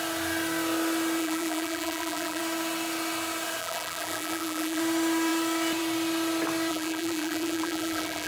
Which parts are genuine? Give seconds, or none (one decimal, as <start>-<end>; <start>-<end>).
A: 0.0-1.2; 2.4-3.6; 4.8-6.7